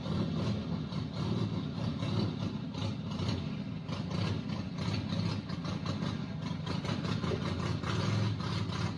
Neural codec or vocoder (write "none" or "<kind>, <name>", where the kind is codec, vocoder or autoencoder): none